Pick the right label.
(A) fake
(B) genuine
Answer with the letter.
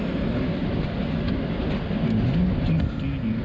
B